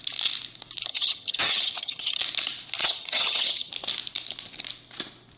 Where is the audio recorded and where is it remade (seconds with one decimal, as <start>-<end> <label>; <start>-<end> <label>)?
0.0-0.9 recorded; 0.9-2.2 remade; 2.2-2.8 recorded; 2.8-3.7 remade; 3.7-5.4 recorded